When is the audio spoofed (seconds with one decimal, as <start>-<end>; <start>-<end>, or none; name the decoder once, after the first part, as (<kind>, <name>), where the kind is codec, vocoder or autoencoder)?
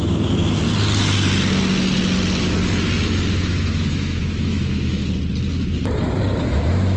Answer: 0.0-0.4 (autoencoder, DAC-VAE); 3.3-5.0; 6.4-7.0